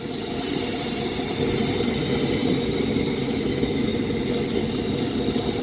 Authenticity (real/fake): real